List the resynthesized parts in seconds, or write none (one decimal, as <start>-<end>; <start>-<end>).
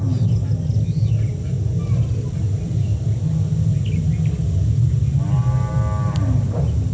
none